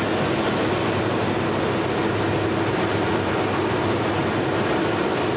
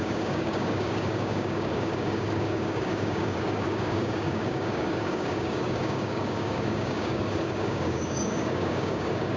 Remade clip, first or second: second